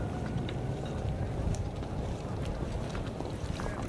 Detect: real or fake fake